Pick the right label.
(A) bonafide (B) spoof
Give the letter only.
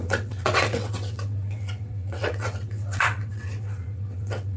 B